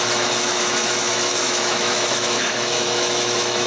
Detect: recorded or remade remade